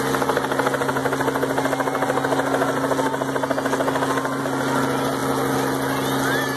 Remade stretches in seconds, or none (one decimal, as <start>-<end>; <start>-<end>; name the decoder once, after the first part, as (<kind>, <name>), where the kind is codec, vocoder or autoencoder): none